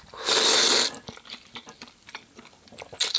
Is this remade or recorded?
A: recorded